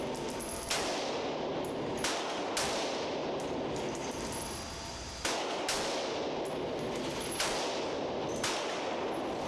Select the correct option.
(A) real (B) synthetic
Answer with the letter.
A